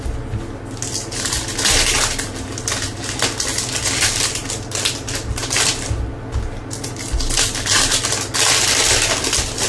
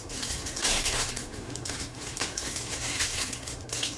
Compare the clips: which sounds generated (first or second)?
second